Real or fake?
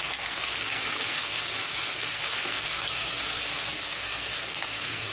fake